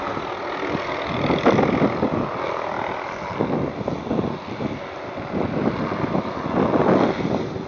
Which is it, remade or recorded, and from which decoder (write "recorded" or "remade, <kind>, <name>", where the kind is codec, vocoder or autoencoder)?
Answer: recorded